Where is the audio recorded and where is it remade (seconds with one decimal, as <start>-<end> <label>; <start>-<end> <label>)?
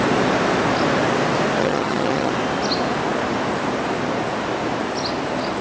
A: 0.0-1.6 recorded; 1.6-2.3 remade; 2.3-5.6 recorded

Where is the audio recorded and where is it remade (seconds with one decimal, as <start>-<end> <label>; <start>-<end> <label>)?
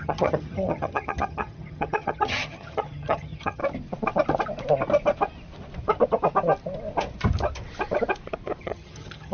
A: 0.0-3.6 remade; 3.6-8.6 recorded; 8.6-9.3 remade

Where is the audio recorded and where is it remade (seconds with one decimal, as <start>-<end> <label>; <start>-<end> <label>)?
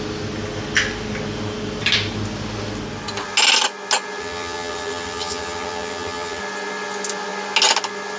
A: 0.0-4.2 recorded; 4.2-6.4 remade; 6.4-8.2 recorded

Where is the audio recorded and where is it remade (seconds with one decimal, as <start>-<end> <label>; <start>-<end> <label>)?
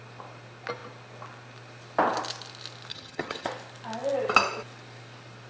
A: 0.0-2.9 recorded; 2.9-3.5 remade; 3.5-5.5 recorded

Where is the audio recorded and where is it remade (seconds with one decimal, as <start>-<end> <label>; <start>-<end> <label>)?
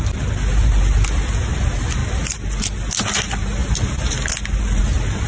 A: 0.0-5.3 recorded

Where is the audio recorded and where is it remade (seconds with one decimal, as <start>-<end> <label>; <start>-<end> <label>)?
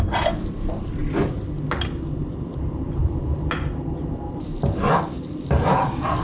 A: 0.0-6.2 recorded